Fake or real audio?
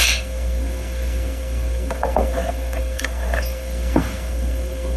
fake